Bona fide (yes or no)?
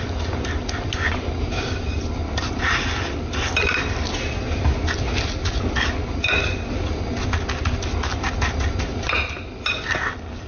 yes